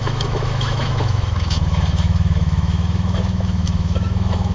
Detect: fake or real fake